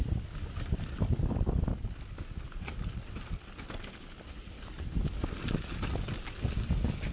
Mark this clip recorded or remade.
recorded